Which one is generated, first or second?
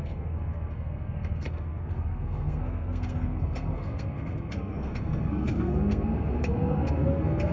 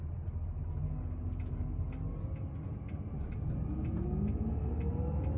first